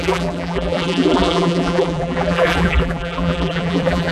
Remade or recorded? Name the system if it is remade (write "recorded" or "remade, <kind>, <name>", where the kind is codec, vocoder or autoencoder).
remade, vocoder, BigVGAN v2